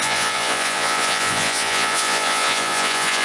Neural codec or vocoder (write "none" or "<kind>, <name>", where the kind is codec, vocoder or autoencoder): vocoder, Vocos